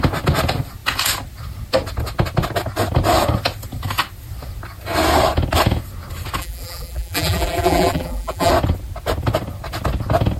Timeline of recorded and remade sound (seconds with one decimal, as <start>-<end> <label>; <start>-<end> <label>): 0.0-6.4 recorded; 6.4-8.5 remade; 8.5-10.4 recorded